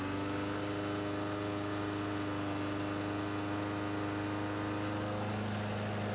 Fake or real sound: real